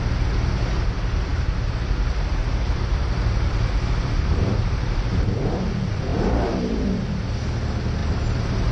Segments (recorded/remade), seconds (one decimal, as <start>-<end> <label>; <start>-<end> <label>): 0.0-1.3 recorded; 1.3-5.4 remade; 5.4-6.1 recorded; 6.1-6.8 remade; 6.8-8.0 recorded; 8.0-8.7 remade